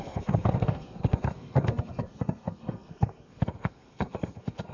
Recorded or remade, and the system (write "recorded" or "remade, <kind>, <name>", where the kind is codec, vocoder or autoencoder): remade, codec, SNAC